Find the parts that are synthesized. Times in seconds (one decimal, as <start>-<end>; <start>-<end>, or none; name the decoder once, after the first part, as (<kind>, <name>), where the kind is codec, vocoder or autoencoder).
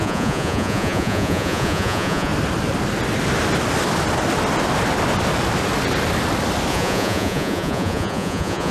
0.0-2.3 (vocoder, Vocos); 6.7-8.7